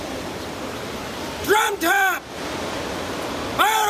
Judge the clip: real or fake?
fake